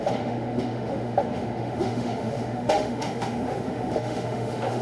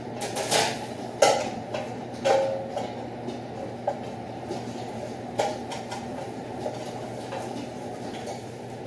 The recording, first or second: second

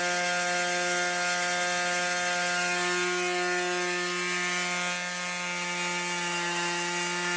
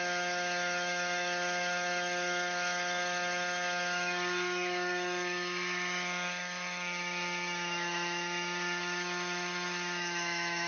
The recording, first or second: first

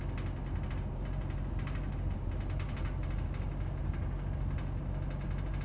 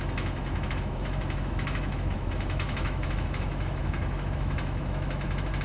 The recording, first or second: first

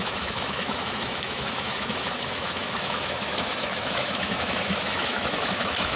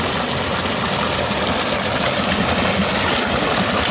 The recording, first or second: second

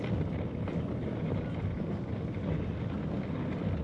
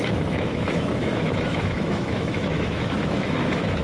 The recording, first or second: first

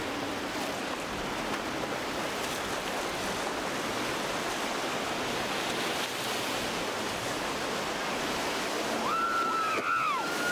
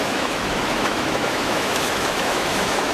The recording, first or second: first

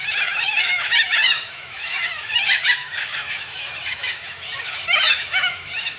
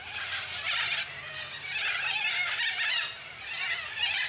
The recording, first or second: second